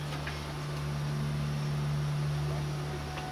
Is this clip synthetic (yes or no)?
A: no